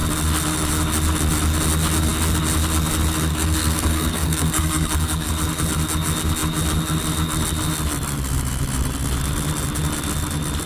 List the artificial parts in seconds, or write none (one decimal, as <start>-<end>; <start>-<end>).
3.3-5.3